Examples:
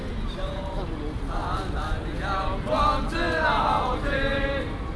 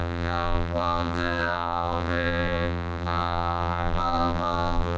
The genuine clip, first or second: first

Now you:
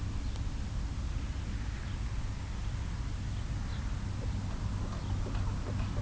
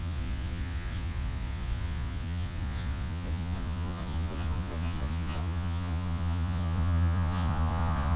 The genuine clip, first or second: first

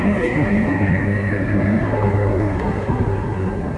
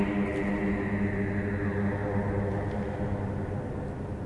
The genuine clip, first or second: second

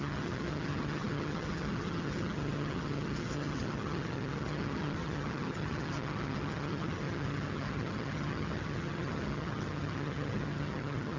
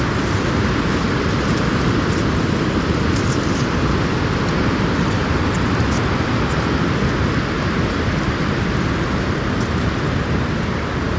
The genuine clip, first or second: second